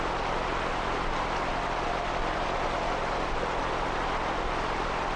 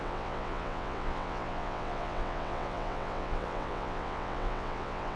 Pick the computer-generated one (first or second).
second